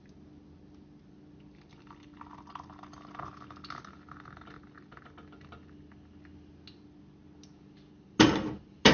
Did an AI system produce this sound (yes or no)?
no